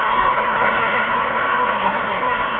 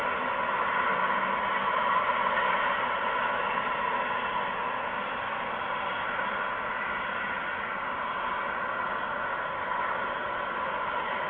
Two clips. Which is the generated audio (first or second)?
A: first